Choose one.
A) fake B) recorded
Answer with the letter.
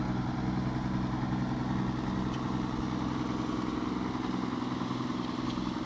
B